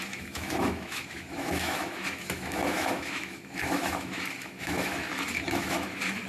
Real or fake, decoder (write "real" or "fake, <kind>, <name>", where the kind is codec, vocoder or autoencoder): fake, autoencoder, DAC-VAE